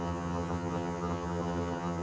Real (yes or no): no